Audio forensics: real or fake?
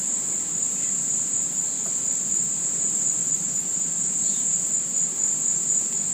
fake